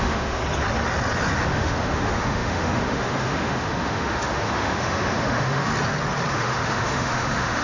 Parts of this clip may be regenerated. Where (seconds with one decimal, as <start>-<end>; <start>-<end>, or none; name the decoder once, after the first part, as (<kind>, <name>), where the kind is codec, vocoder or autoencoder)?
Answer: 0.0-0.4 (autoencoder, DAC-VAE); 1.4-5.7; 6.3-7.6